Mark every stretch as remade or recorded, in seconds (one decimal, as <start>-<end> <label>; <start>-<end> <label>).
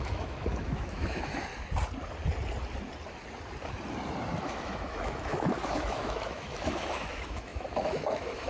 0.0-1.5 remade; 1.5-4.4 recorded; 4.4-8.5 remade